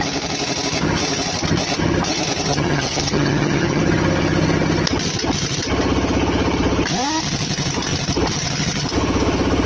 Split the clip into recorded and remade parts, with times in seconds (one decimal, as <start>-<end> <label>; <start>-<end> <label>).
0.0-2.5 recorded; 2.5-3.8 remade; 3.8-9.7 recorded